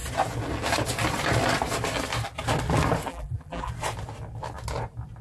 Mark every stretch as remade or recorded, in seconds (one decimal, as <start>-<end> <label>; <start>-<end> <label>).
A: 0.0-3.1 recorded; 3.1-3.7 remade; 3.7-5.2 recorded

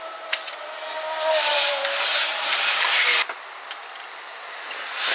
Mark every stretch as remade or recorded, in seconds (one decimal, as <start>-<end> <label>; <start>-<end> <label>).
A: 0.0-1.5 recorded; 1.5-4.6 remade; 4.6-5.1 recorded

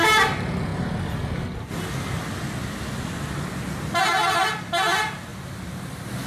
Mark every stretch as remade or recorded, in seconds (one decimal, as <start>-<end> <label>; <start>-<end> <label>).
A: 0.0-5.3 recorded; 5.3-6.3 remade